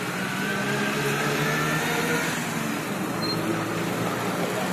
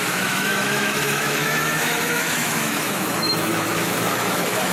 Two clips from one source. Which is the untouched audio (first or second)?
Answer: first